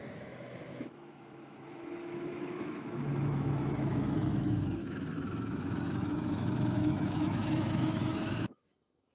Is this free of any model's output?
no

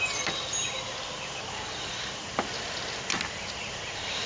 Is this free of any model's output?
yes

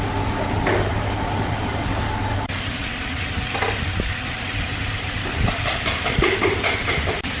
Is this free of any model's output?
yes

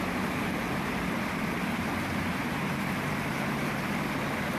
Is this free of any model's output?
no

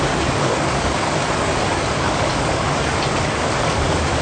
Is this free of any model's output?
no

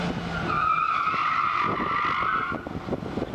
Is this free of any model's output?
yes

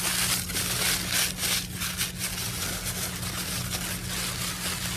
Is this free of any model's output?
yes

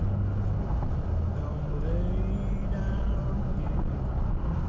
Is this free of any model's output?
yes